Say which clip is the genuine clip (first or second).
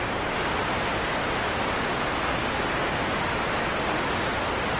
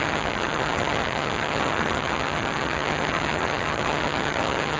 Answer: first